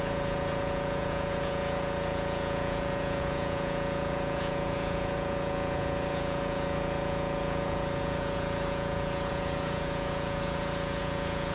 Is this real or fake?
fake